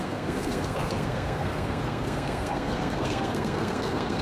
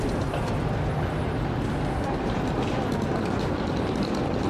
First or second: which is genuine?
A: second